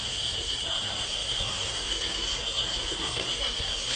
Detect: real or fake fake